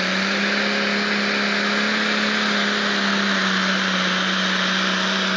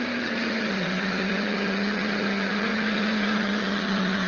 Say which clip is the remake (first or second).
second